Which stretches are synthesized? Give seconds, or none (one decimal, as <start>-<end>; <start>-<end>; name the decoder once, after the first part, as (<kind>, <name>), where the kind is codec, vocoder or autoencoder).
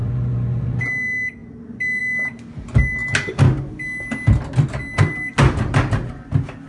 0.0-0.8 (vocoder, Vocos)